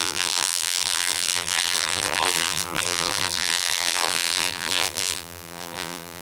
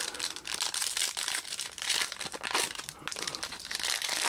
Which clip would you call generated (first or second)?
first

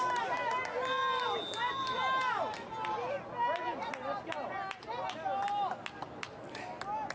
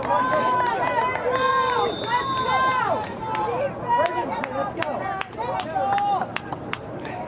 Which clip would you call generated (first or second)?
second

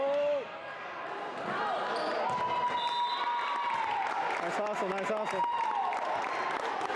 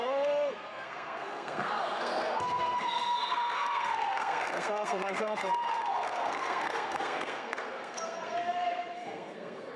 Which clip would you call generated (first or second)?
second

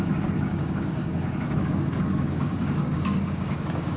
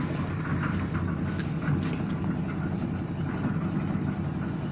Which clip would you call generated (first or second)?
first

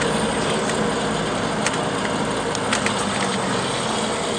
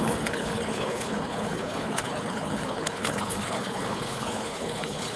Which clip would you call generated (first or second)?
second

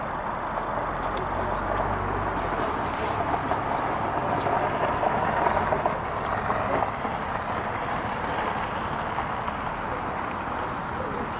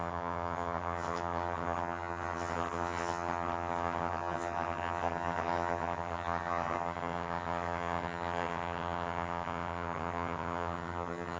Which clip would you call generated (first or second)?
second